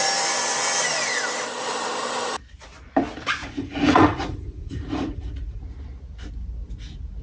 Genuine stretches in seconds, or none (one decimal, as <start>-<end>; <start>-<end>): 0.0-3.4; 5.6-7.2